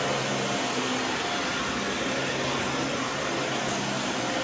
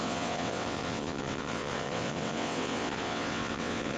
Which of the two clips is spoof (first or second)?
second